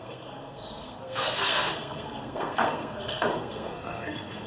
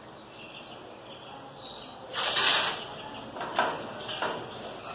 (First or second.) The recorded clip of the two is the second